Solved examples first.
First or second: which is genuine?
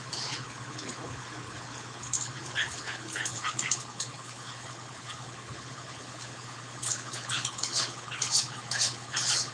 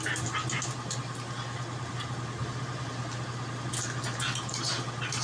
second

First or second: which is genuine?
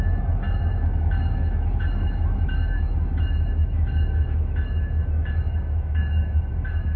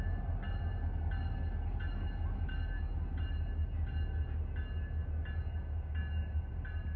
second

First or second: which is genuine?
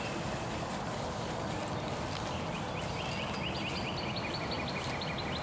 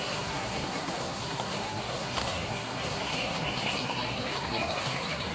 first